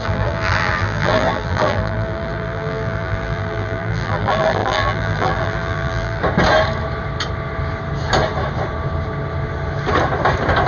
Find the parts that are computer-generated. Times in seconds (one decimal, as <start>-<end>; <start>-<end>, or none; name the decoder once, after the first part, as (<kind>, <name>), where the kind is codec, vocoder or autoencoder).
0.0-6.2 (vocoder, BigVGAN v2)